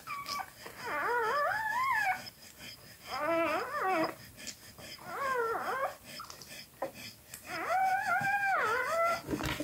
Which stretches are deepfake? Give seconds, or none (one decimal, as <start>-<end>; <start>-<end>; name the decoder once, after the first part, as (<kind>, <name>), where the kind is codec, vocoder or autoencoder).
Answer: none